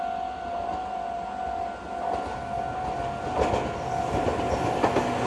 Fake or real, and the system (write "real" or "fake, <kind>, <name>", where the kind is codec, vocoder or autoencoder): real